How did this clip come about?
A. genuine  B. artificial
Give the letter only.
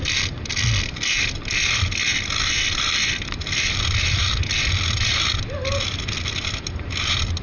A